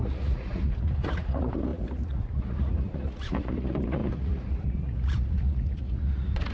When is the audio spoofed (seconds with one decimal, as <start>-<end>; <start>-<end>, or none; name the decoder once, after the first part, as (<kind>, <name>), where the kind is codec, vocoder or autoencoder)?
0.0-6.5 (vocoder, Vocos)